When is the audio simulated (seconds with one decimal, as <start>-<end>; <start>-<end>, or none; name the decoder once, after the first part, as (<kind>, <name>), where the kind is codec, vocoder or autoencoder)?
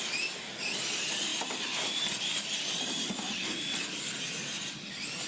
none